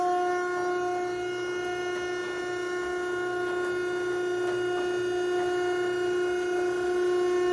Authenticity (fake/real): real